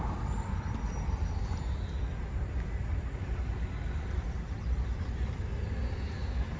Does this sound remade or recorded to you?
remade